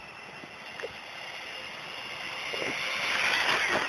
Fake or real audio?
real